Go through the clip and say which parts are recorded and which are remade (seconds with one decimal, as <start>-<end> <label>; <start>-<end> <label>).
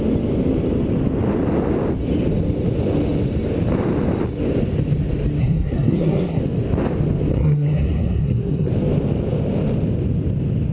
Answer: 0.0-5.4 recorded; 5.4-6.4 remade; 6.4-7.3 recorded; 7.3-8.7 remade; 8.7-10.7 recorded